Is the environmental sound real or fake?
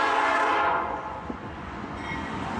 fake